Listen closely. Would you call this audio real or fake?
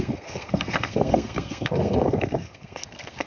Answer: fake